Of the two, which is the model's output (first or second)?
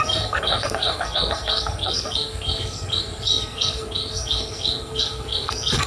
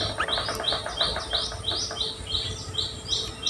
first